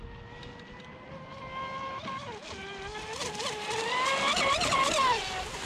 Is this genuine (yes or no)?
yes